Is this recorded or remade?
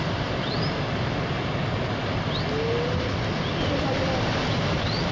recorded